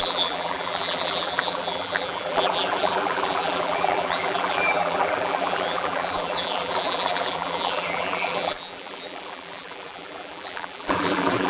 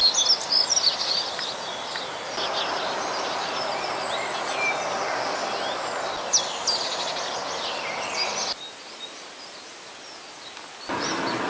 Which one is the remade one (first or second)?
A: first